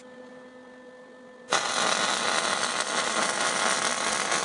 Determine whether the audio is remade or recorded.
recorded